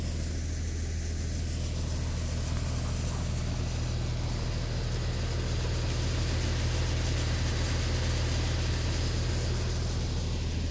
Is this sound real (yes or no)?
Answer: yes